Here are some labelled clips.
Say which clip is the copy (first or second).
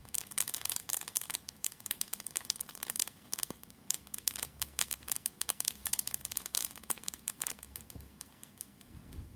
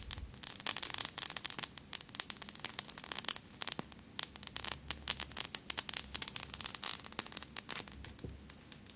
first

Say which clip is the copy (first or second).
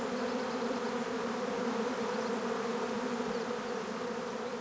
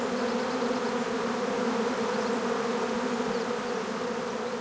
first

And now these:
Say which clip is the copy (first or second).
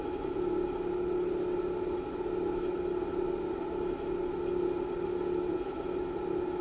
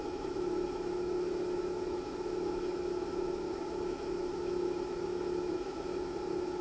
second